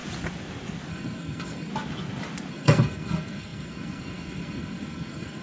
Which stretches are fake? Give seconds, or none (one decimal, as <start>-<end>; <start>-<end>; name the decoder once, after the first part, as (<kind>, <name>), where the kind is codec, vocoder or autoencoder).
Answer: 0.9-1.7 (codec, SNAC); 2.5-5.4